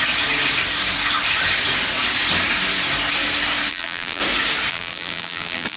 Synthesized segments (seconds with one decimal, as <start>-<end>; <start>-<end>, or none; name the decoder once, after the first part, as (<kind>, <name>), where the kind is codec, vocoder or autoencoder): 3.7-4.2 (vocoder, BigVGAN v2); 4.7-5.8